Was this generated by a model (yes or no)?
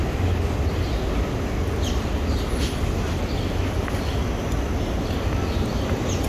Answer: no